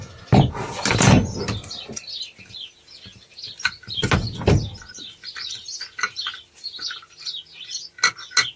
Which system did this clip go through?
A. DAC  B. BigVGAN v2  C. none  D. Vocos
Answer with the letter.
C